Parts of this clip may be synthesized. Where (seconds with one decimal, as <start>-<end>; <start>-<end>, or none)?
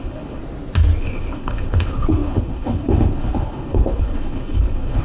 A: 0.0-0.4; 1.0-5.0